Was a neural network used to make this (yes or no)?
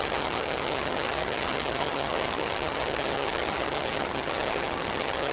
yes